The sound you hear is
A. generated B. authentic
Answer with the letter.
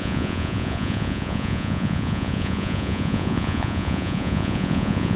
A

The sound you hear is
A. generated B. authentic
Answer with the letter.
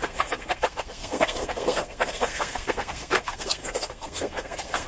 A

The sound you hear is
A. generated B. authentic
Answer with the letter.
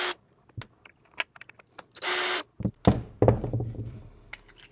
B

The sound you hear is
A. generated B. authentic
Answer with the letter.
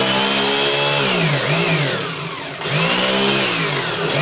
B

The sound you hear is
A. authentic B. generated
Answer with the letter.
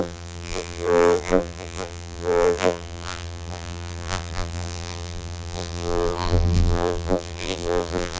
B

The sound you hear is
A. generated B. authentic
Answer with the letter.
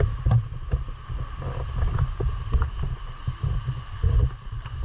B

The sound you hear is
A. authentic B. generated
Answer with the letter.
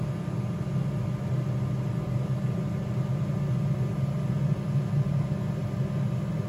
A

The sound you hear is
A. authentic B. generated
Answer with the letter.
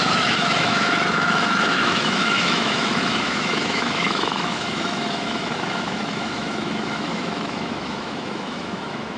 B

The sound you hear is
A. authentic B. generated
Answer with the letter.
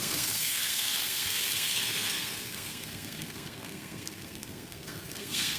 B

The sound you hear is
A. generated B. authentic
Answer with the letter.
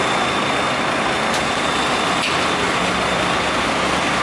B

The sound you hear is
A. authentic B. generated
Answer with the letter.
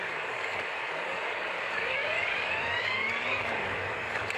B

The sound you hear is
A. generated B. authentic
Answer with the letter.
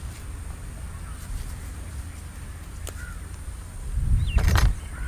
B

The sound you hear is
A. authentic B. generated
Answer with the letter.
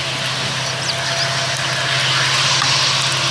A